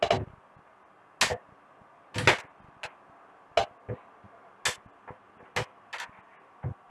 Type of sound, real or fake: real